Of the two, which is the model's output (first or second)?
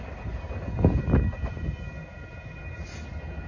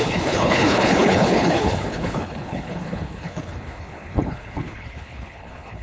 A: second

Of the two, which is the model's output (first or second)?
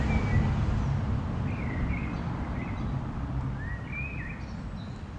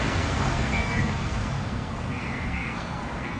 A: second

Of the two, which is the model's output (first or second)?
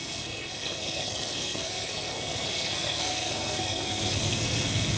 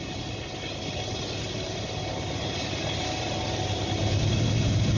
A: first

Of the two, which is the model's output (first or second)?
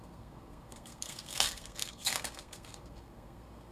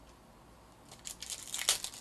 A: first